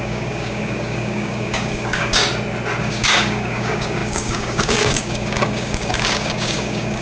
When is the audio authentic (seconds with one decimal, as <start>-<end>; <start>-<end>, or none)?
2.2-2.8